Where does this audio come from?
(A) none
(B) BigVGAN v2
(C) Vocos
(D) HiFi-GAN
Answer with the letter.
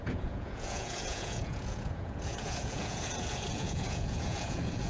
C